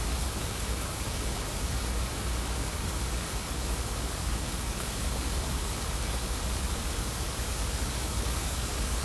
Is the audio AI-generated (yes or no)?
yes